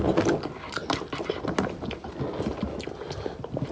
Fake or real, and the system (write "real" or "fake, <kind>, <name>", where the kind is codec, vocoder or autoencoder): real